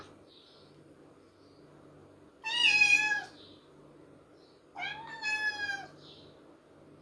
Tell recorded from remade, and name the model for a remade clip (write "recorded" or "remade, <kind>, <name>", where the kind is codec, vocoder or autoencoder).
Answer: recorded